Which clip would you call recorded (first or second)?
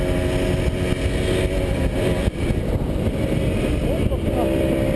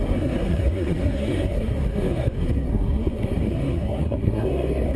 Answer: first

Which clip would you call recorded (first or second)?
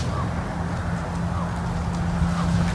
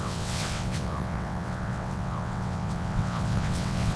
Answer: first